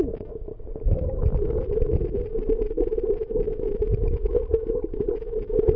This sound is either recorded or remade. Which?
recorded